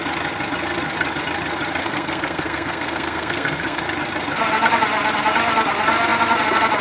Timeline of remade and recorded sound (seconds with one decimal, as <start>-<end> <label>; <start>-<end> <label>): 0.0-1.8 recorded; 1.8-3.8 remade; 3.8-6.8 recorded